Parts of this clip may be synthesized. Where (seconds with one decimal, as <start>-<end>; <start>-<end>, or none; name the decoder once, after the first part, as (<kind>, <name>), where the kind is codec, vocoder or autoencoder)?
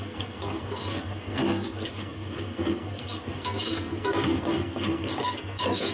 0.0-5.9 (codec, SNAC)